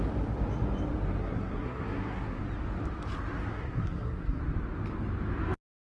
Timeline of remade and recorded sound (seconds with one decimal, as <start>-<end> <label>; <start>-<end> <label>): 0.0-1.2 recorded; 1.2-2.4 remade; 2.4-3.5 recorded; 3.5-4.4 remade; 4.4-5.9 recorded